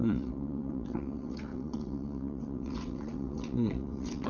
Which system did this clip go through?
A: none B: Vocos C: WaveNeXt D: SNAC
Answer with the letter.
C